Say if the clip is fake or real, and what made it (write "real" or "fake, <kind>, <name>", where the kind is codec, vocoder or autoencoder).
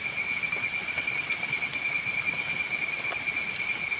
real